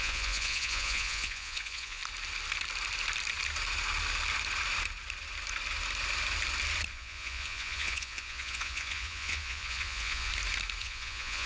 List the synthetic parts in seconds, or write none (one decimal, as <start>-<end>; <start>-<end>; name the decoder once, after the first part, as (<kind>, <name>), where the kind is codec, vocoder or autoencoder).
0.0-2.0 (vocoder, Vocos); 6.9-10.3; 10.8-11.5

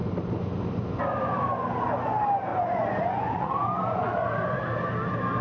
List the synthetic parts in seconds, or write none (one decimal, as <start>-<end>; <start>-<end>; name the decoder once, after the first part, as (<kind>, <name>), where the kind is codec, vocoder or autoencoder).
2.5-4.6 (vocoder, Vocos)

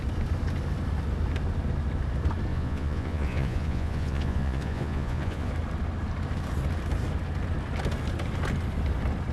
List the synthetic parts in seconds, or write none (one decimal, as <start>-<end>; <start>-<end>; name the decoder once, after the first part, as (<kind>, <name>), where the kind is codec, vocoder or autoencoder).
2.5-5.5 (vocoder, Vocos)

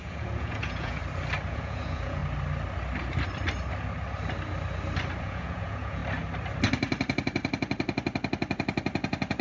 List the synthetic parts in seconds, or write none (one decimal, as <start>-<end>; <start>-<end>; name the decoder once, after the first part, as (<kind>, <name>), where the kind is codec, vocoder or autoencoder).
0.0-1.0 (vocoder, Vocos); 1.5-2.2; 5.2-6.0

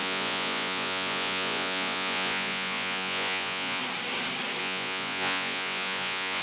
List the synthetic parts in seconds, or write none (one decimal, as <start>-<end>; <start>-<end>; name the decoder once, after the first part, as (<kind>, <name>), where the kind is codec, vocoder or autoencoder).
0.0-3.8 (vocoder, Vocos); 4.6-6.4

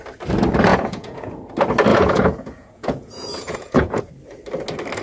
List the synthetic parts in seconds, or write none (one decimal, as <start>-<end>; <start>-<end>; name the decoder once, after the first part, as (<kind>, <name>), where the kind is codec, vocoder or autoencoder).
0.7-1.5 (vocoder, Vocos); 1.9-4.0

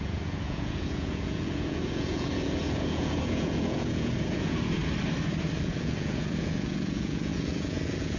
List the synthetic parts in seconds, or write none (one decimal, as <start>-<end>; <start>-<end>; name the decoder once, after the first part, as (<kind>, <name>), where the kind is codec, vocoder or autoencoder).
0.0-4.8 (vocoder, Vocos); 5.6-8.2